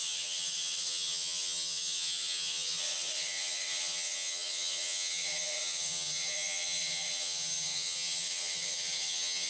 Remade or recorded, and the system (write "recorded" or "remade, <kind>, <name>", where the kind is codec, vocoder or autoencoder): remade, vocoder, HiFi-GAN